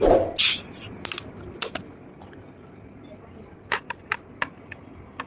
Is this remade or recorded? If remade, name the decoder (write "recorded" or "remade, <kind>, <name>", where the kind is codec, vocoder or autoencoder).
recorded